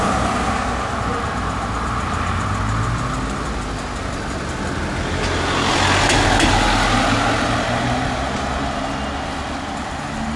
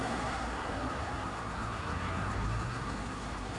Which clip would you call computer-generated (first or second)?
second